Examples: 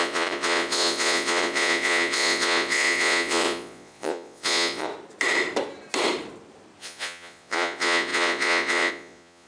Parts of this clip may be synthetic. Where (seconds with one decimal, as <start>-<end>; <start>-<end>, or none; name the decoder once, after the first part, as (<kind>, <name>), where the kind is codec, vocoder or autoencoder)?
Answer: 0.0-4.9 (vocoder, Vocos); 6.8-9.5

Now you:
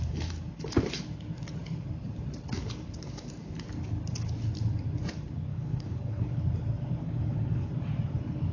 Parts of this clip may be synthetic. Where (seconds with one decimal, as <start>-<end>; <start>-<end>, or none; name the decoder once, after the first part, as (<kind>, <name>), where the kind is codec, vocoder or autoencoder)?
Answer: 5.5-6.4 (codec, HILCodec); 7.0-7.7

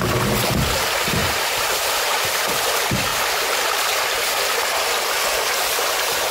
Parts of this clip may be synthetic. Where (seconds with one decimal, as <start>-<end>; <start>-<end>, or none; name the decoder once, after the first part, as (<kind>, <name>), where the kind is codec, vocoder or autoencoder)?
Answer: 1.2-2.2 (vocoder, BigVGAN v2)